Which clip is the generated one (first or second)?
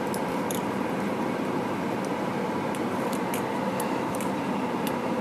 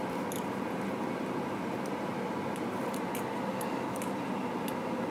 first